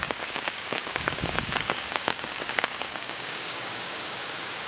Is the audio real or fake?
fake